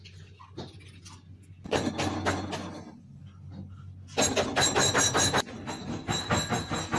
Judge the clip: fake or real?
real